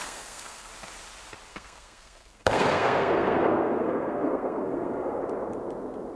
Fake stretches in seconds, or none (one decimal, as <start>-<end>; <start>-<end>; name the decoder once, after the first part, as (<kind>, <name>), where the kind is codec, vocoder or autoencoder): 0.0-0.7 (codec, SNAC); 1.5-5.2

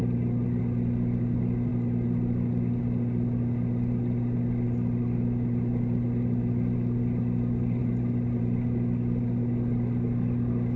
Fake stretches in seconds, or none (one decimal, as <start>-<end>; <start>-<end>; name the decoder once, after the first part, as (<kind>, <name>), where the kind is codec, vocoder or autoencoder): none

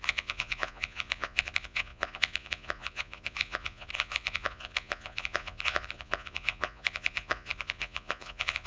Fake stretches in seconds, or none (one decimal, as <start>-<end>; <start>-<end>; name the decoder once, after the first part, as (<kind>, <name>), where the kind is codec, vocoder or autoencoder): 0.0-8.7 (vocoder, Vocos)

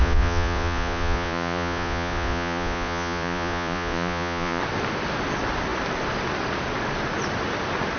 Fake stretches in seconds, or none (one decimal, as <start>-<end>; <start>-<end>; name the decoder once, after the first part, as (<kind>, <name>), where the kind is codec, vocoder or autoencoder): 0.0-4.6 (vocoder, Vocos)

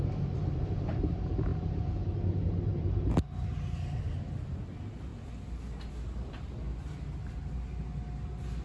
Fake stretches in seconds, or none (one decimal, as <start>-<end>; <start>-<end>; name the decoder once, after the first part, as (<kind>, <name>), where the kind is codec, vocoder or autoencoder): none

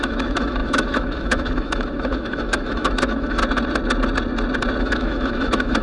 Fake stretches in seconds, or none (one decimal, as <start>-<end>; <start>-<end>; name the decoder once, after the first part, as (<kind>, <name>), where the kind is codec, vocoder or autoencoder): 0.0-3.4 (autoencoder, DAC-VAE); 4.8-5.8

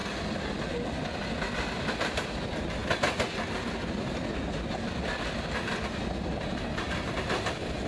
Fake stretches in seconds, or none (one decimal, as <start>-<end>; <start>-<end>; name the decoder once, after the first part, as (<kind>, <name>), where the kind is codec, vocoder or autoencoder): none